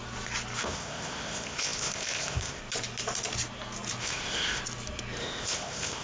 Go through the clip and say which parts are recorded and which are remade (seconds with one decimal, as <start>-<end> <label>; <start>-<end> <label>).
0.0-0.6 recorded; 0.6-2.6 remade; 2.6-4.0 recorded; 4.0-4.6 remade; 4.6-5.2 recorded; 5.2-6.0 remade